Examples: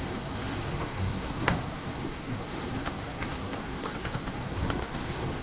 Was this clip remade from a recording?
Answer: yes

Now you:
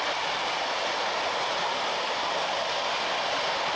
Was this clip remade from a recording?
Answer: no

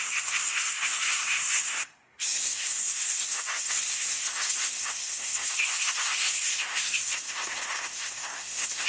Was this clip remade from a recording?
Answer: yes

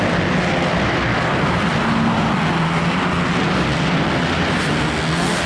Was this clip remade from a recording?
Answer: no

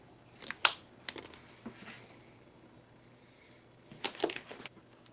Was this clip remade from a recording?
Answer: no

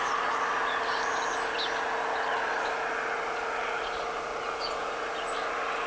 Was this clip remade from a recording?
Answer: no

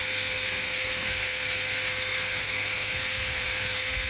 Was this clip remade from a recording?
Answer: yes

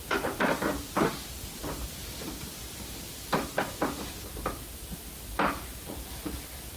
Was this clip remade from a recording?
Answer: no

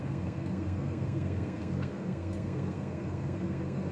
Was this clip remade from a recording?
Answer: yes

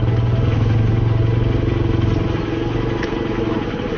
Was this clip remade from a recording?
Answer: no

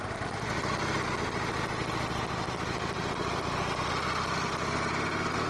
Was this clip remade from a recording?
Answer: no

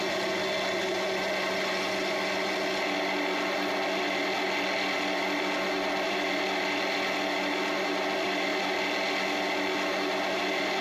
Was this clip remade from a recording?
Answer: no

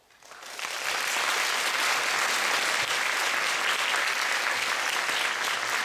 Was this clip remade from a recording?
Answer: no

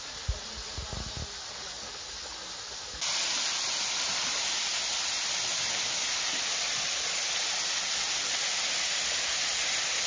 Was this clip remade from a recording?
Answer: no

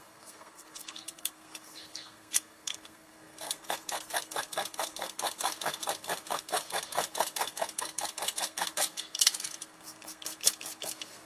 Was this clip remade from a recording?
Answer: yes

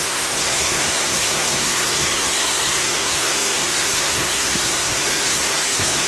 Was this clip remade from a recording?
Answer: yes